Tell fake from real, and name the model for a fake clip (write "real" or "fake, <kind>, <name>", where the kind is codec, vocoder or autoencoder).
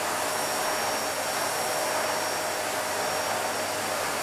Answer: real